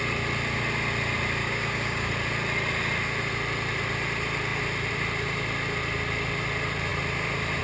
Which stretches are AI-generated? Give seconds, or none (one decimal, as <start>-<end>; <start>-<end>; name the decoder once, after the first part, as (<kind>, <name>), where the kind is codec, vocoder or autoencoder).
1.4-2.1 (codec, DAC)

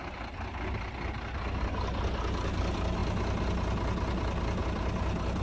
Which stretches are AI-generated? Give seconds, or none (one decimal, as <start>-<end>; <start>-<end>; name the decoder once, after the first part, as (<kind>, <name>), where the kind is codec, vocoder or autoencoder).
none

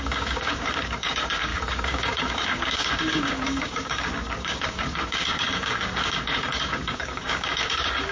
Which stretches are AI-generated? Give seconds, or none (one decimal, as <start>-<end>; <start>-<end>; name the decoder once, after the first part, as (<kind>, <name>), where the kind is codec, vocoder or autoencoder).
0.0-8.1 (codec, DAC)

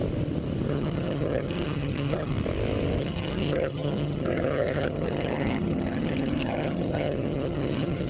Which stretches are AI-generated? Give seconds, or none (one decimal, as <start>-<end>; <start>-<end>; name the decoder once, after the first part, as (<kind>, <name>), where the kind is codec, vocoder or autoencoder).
0.7-2.3 (vocoder, HiFi-GAN); 3.0-8.1

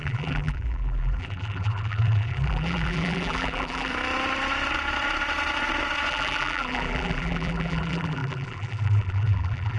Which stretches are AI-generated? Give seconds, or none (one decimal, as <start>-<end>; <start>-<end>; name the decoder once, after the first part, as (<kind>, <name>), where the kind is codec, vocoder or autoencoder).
0.0-3.9 (vocoder, BigVGAN v2); 6.1-9.8

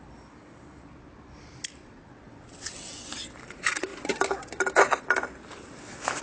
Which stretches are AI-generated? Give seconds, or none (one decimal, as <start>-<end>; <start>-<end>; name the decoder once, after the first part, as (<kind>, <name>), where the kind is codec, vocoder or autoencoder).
1.8-3.0 (vocoder, WaveNeXt)